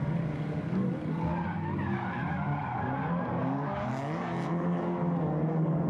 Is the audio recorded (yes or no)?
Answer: no